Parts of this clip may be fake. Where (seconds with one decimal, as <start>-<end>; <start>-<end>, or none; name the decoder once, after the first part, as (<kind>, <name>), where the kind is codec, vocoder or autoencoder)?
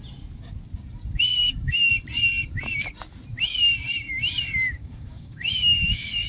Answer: 1.3-1.9 (codec, DAC); 4.8-6.3